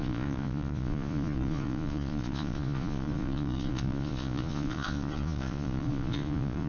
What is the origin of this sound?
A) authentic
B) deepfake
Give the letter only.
B